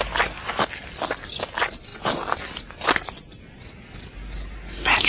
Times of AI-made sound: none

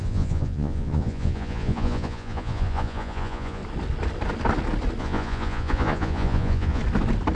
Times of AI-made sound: 0.0-3.6 (vocoder, Vocos); 5.0-6.8

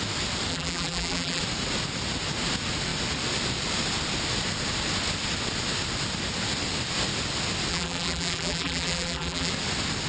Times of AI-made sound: 0.5-1.4 (vocoder, BigVGAN v2); 7.7-9.5

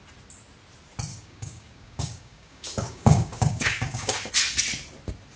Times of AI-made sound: 1.1-4.3 (codec, DAC)